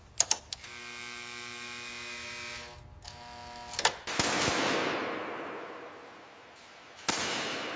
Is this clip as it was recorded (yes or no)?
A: yes